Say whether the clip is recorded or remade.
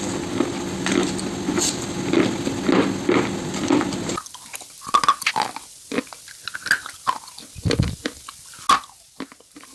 recorded